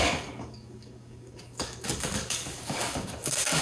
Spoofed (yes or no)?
yes